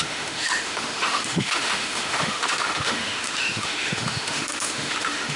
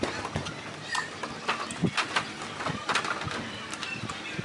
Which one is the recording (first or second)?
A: second